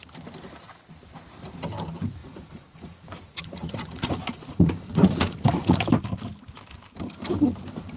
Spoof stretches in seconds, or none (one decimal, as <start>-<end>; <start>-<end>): 2.2-5.8